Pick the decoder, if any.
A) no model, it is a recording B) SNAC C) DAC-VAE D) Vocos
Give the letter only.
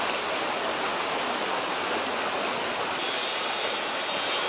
A